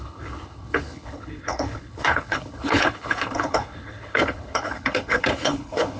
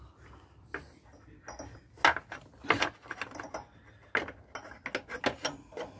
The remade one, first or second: first